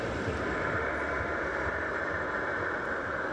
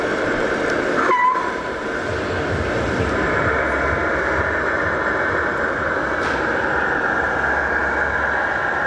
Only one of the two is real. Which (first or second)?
second